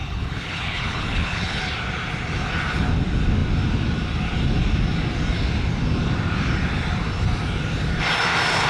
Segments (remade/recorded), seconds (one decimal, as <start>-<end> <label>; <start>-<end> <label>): 0.0-1.6 remade; 1.6-8.7 recorded